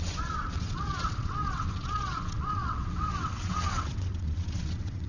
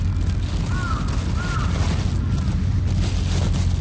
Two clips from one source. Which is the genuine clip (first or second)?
second